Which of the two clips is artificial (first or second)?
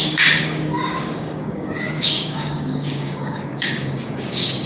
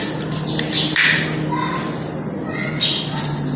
first